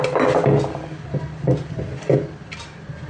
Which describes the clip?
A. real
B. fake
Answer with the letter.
A